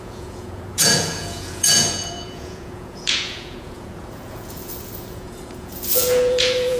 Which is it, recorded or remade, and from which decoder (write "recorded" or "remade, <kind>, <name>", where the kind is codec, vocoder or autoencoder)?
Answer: remade, vocoder, Vocos